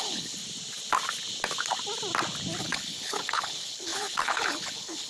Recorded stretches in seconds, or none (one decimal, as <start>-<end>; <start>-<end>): 0.4-2.6